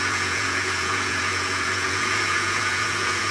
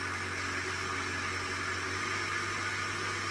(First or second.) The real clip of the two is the second